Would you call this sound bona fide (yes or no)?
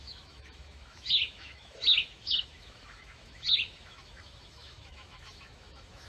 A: no